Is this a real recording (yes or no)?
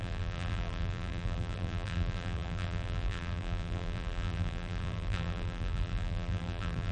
no